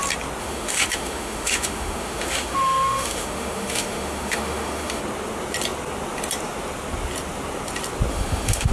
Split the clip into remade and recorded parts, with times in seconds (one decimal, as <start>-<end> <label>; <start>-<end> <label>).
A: 0.0-0.4 recorded; 0.4-5.0 remade; 5.0-8.1 recorded; 8.1-8.7 remade